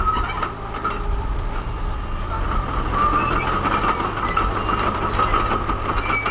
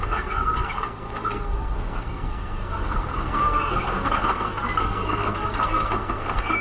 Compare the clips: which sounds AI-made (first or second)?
second